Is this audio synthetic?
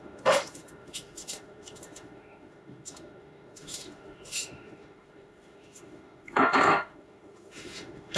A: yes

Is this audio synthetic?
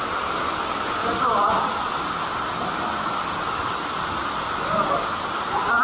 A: no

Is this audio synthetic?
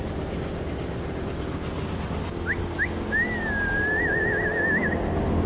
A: no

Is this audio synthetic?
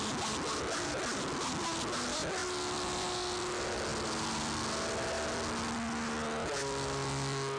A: no